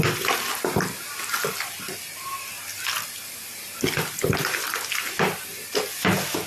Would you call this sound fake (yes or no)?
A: no